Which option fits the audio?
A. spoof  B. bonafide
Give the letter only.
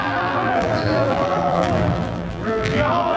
A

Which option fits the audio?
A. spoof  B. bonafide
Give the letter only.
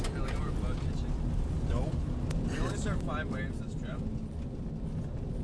B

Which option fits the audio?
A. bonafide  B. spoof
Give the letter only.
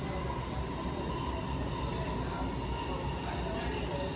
A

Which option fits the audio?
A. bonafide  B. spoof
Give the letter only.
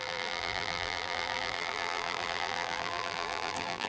B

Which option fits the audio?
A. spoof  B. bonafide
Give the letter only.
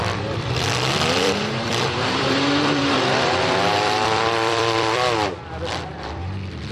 A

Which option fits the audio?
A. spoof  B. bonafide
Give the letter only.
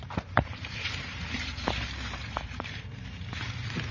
A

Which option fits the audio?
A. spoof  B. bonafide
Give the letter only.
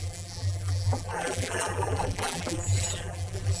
A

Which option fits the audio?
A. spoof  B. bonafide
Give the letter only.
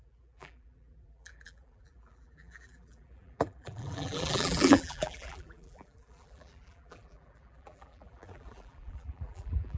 A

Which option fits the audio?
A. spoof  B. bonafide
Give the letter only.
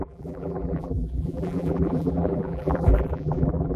A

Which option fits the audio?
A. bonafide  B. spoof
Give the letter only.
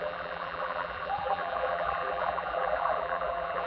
B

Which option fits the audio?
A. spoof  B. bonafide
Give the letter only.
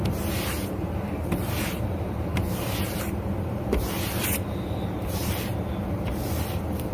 A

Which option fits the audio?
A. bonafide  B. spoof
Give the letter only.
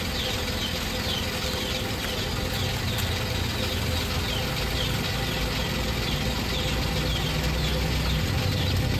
A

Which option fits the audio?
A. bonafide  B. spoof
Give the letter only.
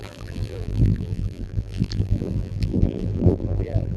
B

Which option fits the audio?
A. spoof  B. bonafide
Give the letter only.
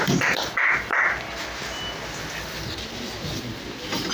B